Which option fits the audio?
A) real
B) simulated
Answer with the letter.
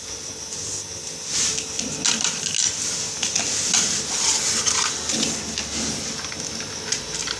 A